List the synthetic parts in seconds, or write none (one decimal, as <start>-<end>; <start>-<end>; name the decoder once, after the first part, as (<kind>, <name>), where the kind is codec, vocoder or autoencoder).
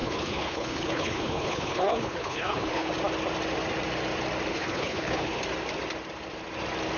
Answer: 0.0-2.9 (codec, HILCodec); 4.5-5.4